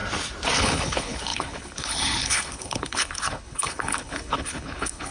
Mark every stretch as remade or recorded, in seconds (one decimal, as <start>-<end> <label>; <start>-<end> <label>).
0.0-0.6 recorded; 0.6-5.1 remade